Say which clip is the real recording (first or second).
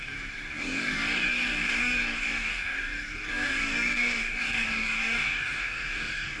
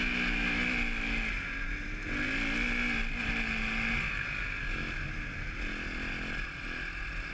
second